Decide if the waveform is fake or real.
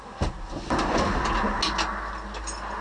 real